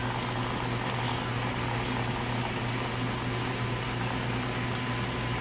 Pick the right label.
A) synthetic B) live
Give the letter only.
B